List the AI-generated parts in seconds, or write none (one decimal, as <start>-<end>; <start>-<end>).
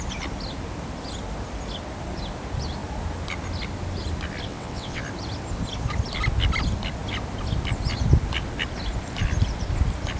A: 4.5-5.0